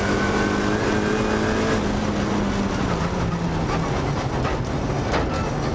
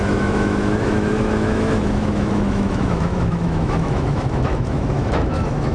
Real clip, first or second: first